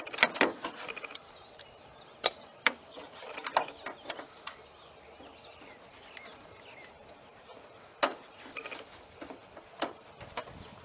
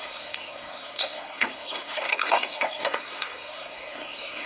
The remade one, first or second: second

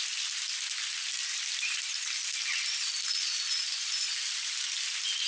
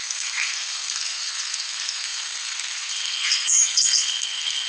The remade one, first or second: second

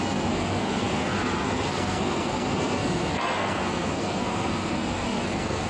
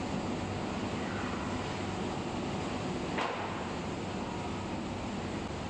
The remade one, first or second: first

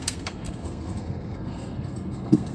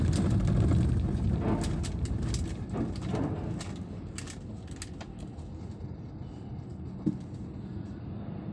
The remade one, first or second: first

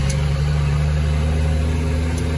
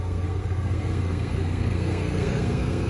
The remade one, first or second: second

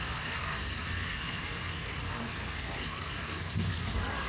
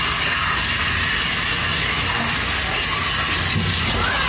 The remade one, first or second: first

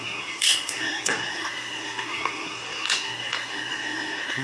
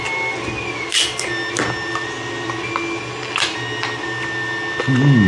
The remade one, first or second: first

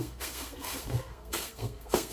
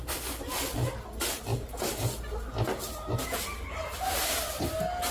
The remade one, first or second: first